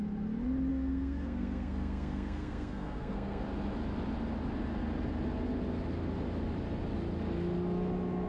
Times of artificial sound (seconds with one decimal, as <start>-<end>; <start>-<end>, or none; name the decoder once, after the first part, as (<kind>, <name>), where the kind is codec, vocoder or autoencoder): 0.7-3.4 (codec, SNAC)